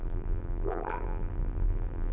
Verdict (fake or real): fake